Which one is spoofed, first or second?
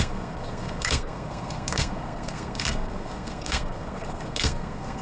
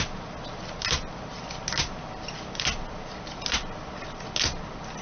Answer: first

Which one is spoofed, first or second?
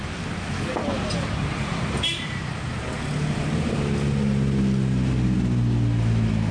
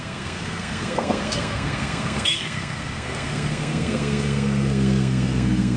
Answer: second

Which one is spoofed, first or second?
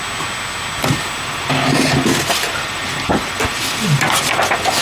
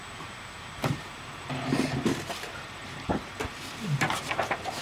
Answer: second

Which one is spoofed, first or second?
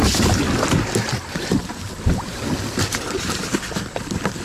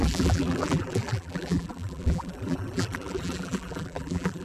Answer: second